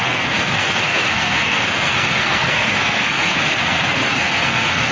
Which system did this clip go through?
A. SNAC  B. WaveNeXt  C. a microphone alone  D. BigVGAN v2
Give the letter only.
A